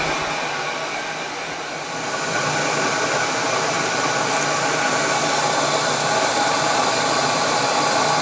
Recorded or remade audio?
recorded